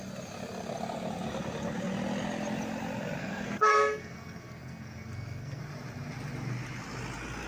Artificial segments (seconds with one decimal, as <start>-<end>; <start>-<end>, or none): 3.2-5.6